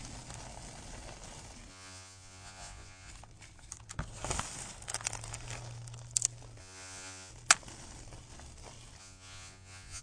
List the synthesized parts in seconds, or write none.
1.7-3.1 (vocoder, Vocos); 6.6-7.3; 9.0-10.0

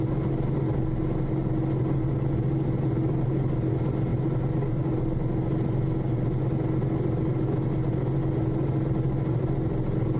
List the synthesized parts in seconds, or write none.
none

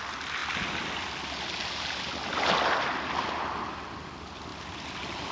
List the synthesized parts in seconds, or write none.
none

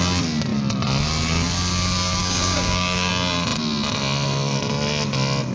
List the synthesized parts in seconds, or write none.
2.2-3.1 (codec, DAC)

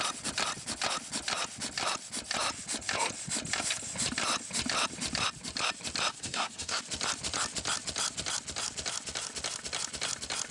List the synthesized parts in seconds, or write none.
6.1-6.8 (codec, SNAC)